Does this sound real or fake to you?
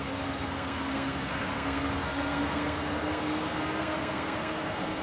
fake